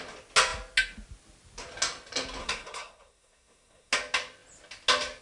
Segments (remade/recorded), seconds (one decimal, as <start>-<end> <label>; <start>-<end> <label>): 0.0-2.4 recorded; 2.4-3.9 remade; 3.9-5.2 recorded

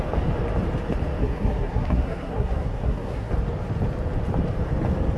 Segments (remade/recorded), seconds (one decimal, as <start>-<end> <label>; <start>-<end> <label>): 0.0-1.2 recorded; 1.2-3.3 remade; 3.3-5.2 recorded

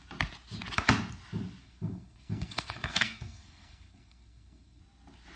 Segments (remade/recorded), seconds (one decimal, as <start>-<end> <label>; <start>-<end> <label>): 0.0-1.6 recorded; 1.6-4.8 remade; 4.8-5.4 recorded

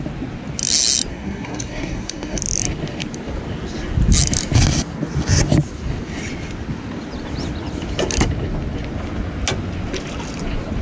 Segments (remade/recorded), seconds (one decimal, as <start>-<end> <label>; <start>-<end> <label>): 0.0-1.1 recorded; 1.1-2.4 remade; 2.4-10.8 recorded

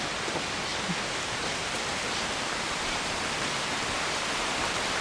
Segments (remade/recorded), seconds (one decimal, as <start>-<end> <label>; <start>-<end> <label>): 0.0-5.0 recorded

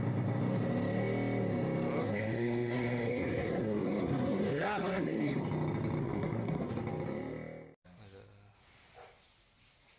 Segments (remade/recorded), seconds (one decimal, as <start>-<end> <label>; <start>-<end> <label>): 0.0-2.0 recorded; 2.0-5.4 remade; 5.4-6.0 recorded; 6.0-6.7 remade; 6.7-10.0 recorded

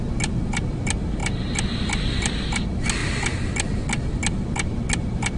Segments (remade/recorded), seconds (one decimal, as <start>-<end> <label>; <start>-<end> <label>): 0.0-5.4 recorded

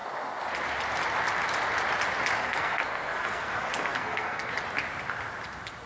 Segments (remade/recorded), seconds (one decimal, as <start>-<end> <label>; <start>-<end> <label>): 0.0-2.4 recorded; 2.4-4.5 remade; 4.5-5.9 recorded